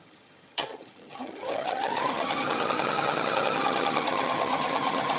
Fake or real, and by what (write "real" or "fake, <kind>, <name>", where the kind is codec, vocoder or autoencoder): fake, vocoder, HiFi-GAN